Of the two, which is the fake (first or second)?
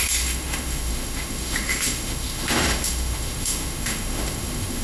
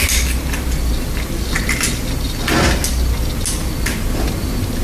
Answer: first